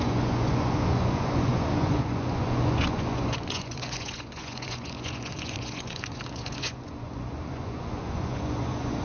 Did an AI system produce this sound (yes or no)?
yes